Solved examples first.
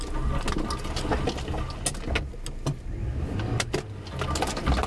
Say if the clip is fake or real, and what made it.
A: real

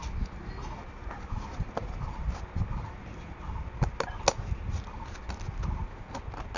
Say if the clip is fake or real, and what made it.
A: real